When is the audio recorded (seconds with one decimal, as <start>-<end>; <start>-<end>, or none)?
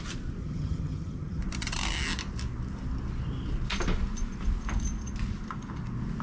0.0-0.4; 1.4-6.2